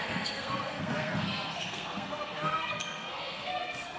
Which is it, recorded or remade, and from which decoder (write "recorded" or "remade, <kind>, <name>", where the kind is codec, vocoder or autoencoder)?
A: remade, codec, SNAC